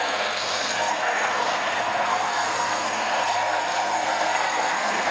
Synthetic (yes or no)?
yes